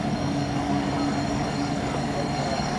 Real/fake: fake